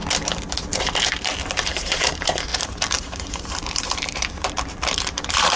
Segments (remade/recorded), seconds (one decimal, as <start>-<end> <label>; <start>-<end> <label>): 0.0-0.8 recorded; 0.8-5.6 remade